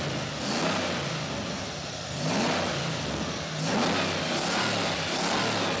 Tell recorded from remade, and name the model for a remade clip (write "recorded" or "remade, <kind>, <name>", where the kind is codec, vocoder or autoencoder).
recorded